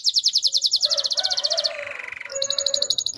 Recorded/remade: remade